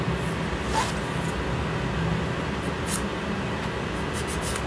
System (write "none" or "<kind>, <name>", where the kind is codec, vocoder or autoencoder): none